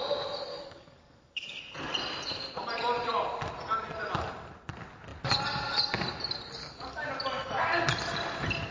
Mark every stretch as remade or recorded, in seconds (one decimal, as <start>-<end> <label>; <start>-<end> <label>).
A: 0.0-0.5 recorded; 0.5-1.6 remade; 1.6-6.6 recorded; 6.6-7.1 remade; 7.1-8.7 recorded